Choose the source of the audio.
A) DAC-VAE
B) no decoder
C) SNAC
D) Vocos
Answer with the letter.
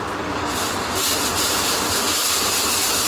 B